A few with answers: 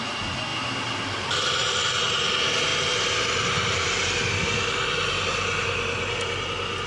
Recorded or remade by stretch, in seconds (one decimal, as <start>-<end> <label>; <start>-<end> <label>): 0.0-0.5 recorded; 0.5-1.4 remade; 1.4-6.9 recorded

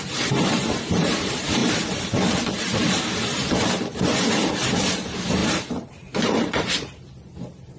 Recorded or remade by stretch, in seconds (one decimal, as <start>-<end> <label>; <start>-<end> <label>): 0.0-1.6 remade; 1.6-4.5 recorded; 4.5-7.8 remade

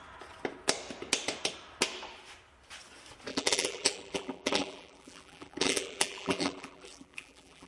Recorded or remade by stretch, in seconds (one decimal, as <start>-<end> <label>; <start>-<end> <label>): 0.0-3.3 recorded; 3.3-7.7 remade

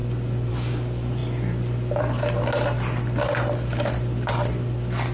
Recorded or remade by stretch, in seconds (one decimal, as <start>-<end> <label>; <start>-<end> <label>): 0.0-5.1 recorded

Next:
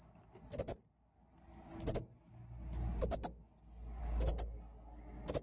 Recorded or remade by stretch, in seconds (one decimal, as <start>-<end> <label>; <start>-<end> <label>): 0.0-5.4 recorded

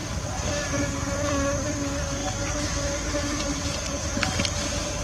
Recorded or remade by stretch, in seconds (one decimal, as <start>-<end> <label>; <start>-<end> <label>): 0.0-0.8 remade; 0.8-2.2 recorded; 2.2-4.4 remade; 4.4-5.0 recorded

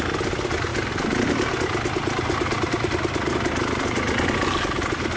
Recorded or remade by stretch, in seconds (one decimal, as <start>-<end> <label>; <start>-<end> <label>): 0.0-5.2 recorded